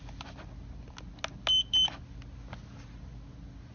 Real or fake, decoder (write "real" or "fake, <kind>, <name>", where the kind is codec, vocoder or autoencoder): real